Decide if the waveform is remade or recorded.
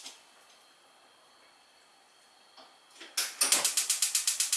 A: recorded